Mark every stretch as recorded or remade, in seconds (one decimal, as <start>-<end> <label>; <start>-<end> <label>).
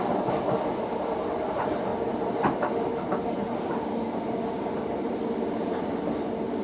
0.0-6.6 recorded